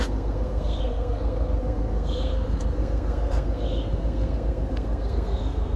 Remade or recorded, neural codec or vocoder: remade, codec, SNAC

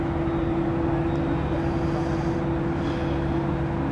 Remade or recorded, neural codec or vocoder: recorded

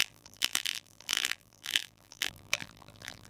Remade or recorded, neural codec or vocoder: remade, vocoder, BigVGAN v2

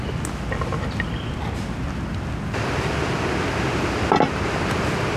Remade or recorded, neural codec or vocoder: recorded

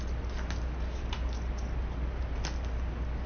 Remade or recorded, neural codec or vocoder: recorded